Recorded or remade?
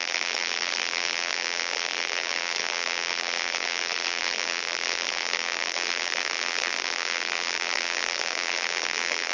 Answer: remade